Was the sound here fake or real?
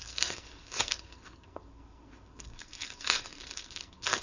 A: fake